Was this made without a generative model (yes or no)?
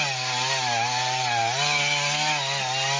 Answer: yes